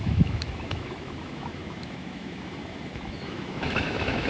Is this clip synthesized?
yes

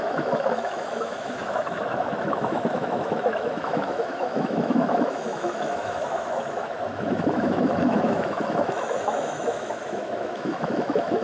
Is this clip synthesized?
yes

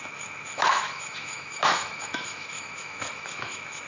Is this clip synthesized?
yes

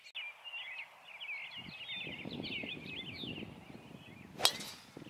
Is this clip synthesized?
no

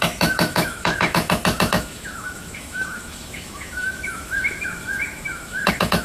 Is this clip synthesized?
yes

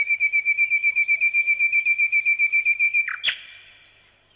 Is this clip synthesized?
no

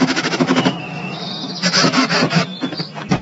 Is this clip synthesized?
yes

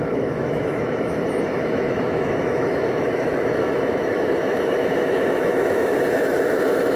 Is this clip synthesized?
yes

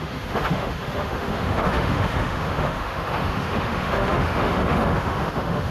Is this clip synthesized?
yes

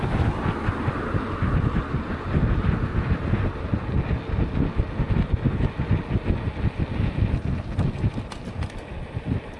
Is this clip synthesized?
no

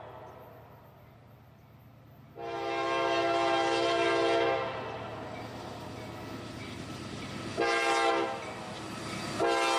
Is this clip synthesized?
no